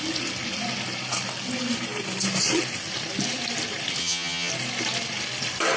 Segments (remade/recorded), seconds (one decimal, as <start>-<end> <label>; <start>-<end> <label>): 0.0-4.0 recorded; 4.0-4.5 remade; 4.5-5.8 recorded